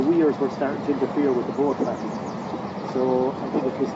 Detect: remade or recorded recorded